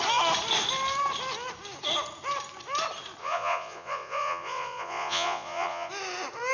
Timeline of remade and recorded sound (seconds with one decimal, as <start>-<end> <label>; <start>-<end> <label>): 0.0-3.2 recorded; 3.2-5.9 remade; 5.9-6.5 recorded